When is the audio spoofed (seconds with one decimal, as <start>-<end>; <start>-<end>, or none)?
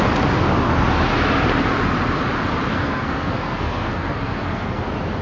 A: 2.7-4.8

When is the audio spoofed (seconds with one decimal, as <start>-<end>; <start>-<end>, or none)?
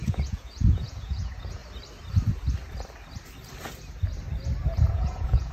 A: 0.0-1.6; 4.9-5.5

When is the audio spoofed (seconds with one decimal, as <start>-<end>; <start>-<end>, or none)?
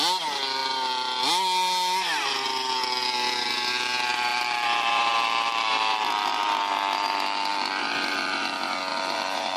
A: 4.3-8.5; 8.9-9.6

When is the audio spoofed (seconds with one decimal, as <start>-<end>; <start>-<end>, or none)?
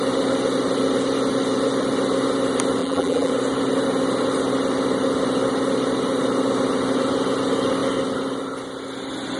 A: 2.8-3.3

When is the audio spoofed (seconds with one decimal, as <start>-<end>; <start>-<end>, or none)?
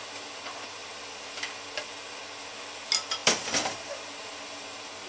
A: 0.8-1.5; 3.2-4.0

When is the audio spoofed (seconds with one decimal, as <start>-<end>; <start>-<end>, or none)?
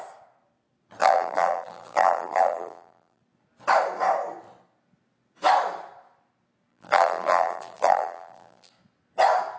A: 1.0-3.2; 6.7-8.7